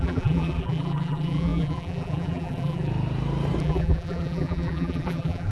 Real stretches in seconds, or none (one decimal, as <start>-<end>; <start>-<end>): 2.9-3.6